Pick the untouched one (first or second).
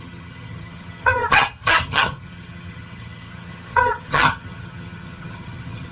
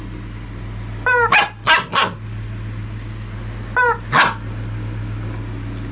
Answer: second